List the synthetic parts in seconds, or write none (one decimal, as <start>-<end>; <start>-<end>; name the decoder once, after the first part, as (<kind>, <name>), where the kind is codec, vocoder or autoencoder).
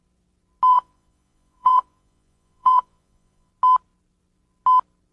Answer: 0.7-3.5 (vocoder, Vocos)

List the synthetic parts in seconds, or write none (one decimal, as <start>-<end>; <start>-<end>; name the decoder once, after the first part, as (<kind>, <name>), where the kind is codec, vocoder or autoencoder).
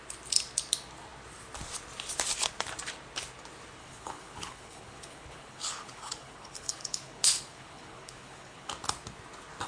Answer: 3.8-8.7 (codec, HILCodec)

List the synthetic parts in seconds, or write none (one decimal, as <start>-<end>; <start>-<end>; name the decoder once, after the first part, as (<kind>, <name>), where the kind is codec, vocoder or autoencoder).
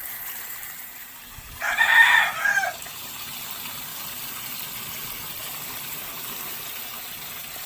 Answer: 0.0-1.9 (vocoder, BigVGAN v2); 2.7-3.9; 5.9-7.7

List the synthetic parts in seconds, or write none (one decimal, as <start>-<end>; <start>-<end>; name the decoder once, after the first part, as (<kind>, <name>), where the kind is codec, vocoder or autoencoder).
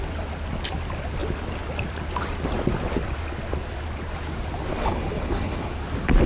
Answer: 4.7-5.7 (codec, HILCodec)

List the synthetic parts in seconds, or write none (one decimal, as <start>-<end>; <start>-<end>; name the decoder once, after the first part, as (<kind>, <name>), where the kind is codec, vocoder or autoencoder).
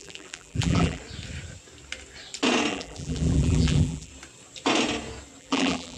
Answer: 0.0-1.0 (vocoder, BigVGAN v2); 2.7-4.1; 5.4-6.0